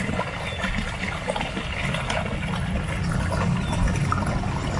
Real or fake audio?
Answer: real